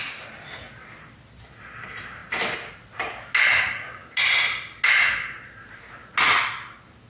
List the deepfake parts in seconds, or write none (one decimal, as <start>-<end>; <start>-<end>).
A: none